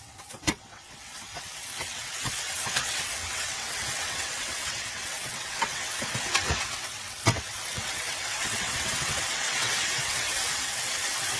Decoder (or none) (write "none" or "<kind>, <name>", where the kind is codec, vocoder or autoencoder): vocoder, WaveNeXt